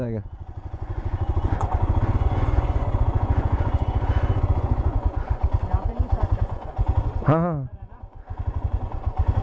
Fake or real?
fake